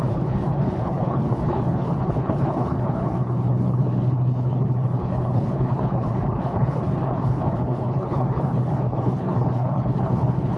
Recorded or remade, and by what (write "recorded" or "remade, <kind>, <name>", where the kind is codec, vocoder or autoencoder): remade, codec, HILCodec